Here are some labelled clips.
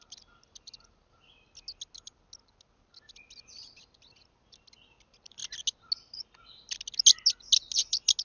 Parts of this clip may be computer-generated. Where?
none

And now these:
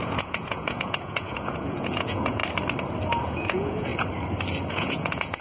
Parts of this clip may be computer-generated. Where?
0.0-2.4 (vocoder, Vocos); 3.1-3.9; 4.7-5.4

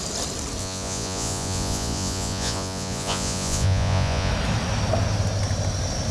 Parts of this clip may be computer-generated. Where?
0.6-4.3 (vocoder, Vocos)